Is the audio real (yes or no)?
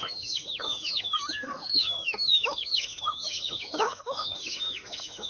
no